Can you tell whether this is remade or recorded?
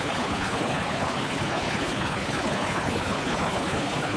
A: remade